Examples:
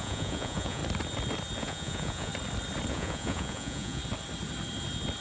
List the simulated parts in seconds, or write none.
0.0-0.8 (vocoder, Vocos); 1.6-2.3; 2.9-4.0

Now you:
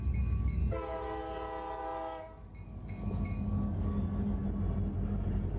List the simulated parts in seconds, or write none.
0.0-0.6 (codec, DAC); 1.8-4.4